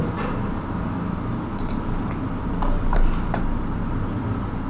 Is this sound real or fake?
real